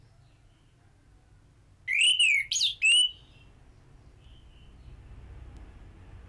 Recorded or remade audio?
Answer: recorded